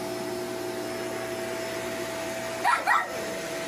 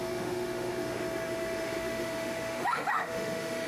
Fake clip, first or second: second